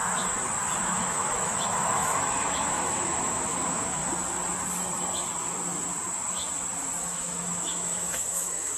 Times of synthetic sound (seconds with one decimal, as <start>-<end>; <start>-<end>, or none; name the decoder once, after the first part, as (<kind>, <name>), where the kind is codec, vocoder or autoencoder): 0.8-4.0 (autoencoder, DAC-VAE); 7.0-8.8